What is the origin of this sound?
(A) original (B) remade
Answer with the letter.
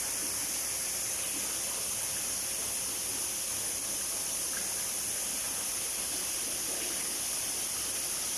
A